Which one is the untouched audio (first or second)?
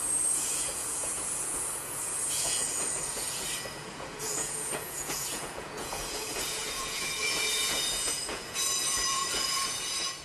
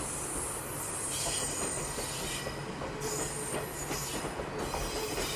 second